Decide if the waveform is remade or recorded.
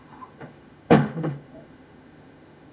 remade